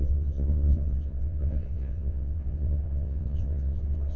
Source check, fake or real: fake